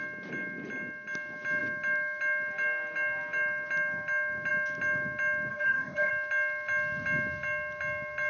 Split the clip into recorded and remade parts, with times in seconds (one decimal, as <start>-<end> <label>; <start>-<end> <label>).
0.0-5.5 recorded; 5.5-6.1 remade; 6.1-8.3 recorded